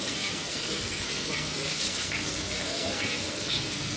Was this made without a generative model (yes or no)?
no